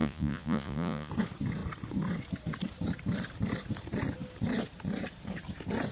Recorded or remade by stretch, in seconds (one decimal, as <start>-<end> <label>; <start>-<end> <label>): 0.0-1.1 remade; 1.1-5.9 recorded